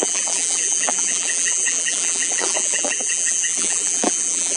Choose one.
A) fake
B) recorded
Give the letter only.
A